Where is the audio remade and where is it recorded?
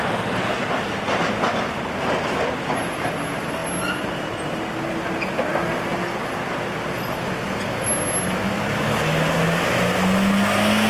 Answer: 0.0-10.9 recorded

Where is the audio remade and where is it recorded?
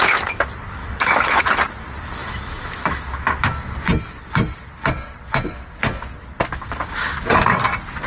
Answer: 0.0-0.8 recorded; 0.8-1.4 remade; 1.4-2.2 recorded; 2.2-3.3 remade; 3.3-8.1 recorded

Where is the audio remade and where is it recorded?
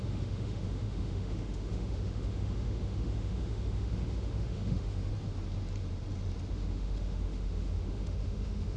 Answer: 0.0-5.1 remade; 5.1-6.5 recorded; 6.5-8.8 remade